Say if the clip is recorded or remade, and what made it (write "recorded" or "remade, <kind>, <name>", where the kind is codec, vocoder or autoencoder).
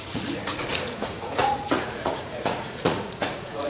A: remade, vocoder, Vocos